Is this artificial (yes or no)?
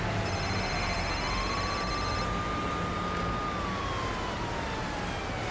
no